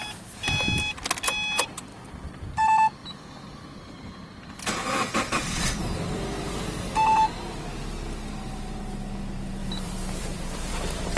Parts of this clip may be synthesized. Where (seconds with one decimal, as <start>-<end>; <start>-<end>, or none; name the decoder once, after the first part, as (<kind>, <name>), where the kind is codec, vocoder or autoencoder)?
1.9-2.4 (vocoder, BigVGAN v2); 3.0-5.8; 9.6-11.2